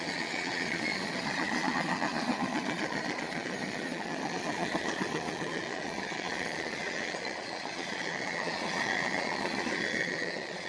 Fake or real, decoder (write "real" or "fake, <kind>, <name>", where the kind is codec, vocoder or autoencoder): fake, vocoder, Vocos